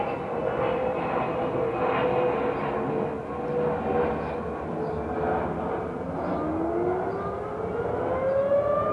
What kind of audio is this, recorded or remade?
recorded